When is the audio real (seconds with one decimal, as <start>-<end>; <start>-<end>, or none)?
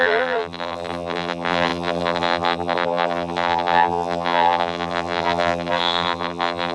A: none